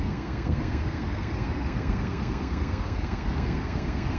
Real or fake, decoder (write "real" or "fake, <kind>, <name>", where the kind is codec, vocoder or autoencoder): fake, codec, SNAC